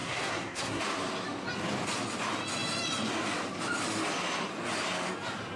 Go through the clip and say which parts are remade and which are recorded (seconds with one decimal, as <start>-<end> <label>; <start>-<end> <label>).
0.0-0.8 remade; 0.8-5.6 recorded